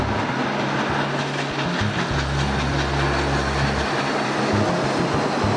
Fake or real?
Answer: real